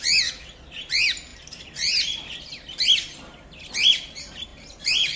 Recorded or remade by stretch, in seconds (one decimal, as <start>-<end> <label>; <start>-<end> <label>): 0.0-5.2 recorded